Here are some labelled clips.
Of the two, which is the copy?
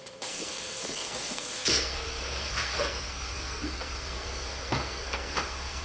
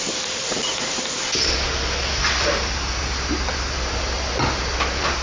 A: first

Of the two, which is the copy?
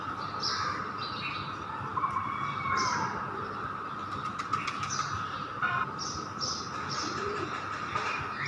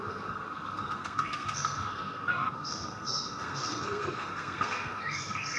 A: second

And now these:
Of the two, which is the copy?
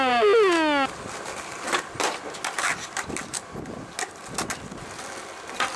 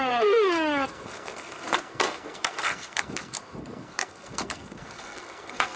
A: second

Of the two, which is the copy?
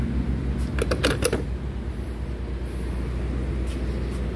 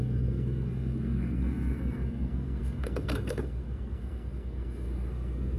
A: second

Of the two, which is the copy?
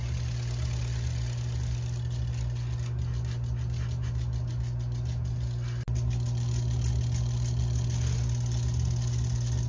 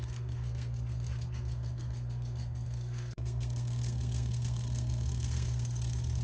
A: second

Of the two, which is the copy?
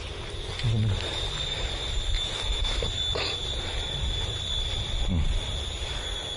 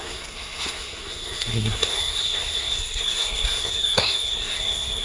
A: second